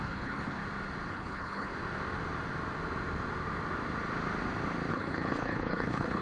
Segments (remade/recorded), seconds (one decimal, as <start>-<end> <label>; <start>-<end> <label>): 0.0-0.6 remade; 0.6-1.1 recorded; 1.1-1.7 remade; 1.7-4.9 recorded; 4.9-6.2 remade